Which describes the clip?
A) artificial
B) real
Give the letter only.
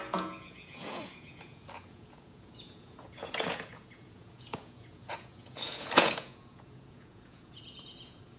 A